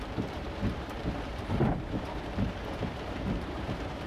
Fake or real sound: fake